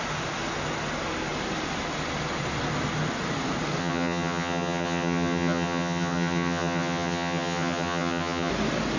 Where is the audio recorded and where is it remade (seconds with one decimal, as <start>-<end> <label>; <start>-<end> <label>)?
0.0-3.8 recorded; 3.8-8.5 remade; 8.5-9.0 recorded